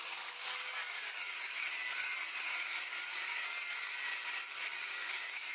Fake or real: fake